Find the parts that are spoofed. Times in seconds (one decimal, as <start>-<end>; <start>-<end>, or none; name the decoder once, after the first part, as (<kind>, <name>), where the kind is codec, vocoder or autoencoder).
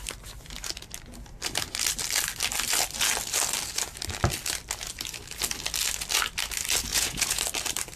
6.9-7.4 (vocoder, Vocos)